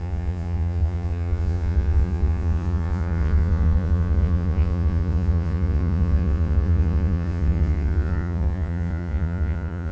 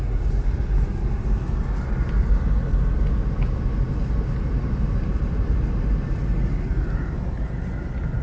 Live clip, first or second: second